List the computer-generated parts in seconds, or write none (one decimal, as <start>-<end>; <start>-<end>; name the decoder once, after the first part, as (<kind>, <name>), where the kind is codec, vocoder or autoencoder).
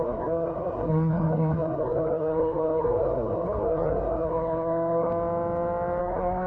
0.0-5.1 (codec, SNAC); 6.0-6.5